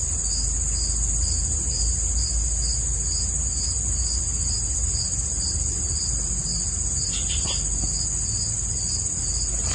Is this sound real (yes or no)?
yes